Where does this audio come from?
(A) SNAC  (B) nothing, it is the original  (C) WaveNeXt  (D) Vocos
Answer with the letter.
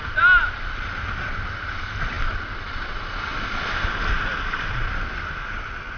B